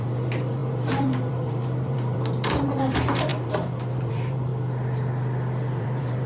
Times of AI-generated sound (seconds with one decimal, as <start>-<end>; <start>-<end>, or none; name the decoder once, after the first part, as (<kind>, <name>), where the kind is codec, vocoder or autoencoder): 0.0-4.5 (vocoder, BigVGAN v2); 5.8-6.3